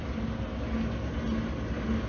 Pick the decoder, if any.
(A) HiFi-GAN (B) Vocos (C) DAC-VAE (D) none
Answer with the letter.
D